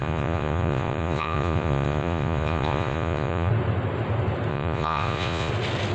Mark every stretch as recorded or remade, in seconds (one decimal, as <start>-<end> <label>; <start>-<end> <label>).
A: 0.0-3.5 remade; 3.5-4.5 recorded; 4.5-5.5 remade; 5.5-5.9 recorded